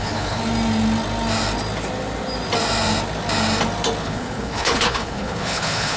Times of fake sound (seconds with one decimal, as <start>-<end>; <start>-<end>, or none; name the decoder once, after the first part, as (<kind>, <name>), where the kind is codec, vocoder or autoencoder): 0.0-0.4 (codec, HILCodec); 4.0-6.0

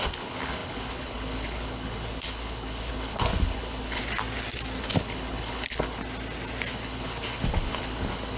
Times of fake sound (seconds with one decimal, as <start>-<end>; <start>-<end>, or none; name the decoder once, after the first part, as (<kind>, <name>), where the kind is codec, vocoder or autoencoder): 0.0-4.0 (codec, HILCodec); 4.8-6.0; 6.7-8.4

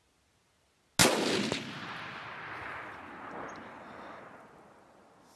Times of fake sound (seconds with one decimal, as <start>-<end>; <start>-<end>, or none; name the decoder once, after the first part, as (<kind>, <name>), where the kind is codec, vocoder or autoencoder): none